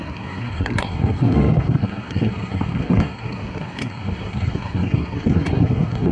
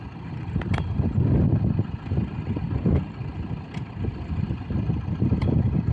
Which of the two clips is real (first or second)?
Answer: second